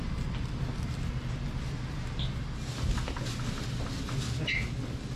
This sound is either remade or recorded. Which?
recorded